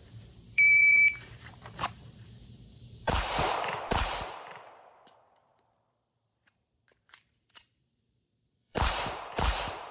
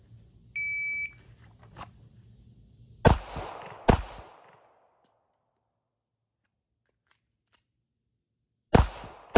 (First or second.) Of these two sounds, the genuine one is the second